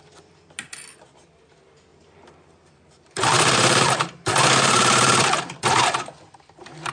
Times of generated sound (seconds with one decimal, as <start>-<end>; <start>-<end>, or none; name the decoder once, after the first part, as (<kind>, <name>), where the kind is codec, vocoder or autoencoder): 1.9-6.0 (vocoder, BigVGAN v2)